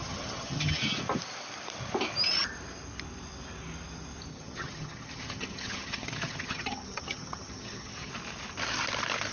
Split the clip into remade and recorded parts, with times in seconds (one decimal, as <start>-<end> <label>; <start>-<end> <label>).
0.0-0.8 remade; 0.8-4.3 recorded; 4.3-8.1 remade; 8.1-9.3 recorded